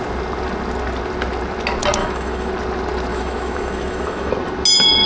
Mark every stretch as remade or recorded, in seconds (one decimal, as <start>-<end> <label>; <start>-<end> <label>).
0.0-2.0 recorded; 2.0-2.5 remade; 2.5-3.1 recorded; 3.1-4.3 remade; 4.3-5.1 recorded